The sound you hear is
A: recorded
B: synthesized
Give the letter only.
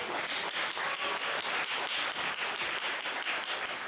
A